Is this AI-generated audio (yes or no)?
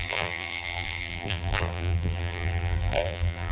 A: yes